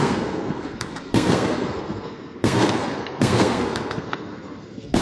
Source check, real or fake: fake